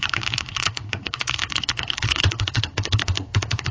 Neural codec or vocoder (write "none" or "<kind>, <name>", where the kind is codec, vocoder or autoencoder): codec, SNAC